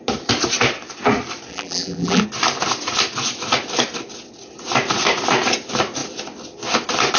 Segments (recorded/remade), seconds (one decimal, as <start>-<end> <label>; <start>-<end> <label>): 0.0-1.5 recorded; 1.5-2.2 remade; 2.2-7.2 recorded